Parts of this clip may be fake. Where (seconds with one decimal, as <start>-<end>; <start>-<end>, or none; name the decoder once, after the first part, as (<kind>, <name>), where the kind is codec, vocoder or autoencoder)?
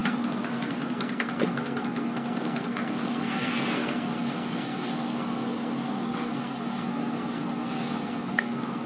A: 0.0-8.9 (codec, SNAC)